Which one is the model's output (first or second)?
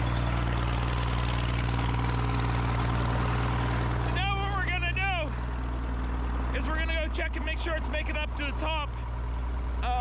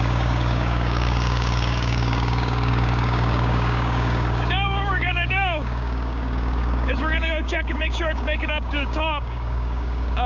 second